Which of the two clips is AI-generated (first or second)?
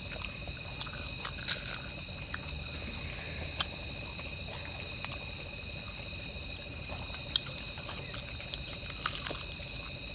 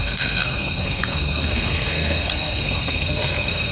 second